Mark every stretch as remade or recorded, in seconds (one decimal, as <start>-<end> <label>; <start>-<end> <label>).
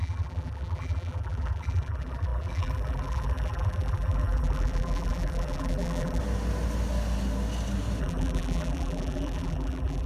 0.0-6.2 remade; 6.2-8.0 recorded; 8.0-10.1 remade